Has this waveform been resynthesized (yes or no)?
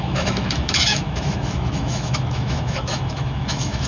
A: yes